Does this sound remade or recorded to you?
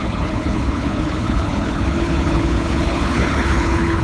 remade